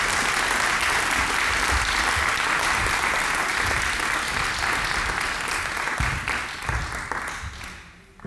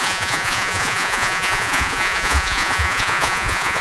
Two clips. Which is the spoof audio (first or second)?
second